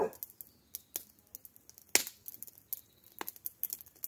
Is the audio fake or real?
real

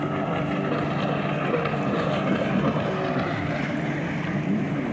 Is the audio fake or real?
real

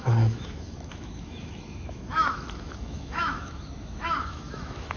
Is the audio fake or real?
fake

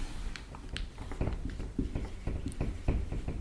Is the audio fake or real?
real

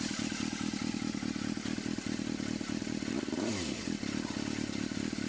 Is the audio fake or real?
real